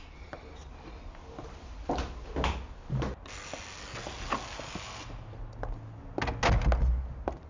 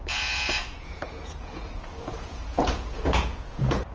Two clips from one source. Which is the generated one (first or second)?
second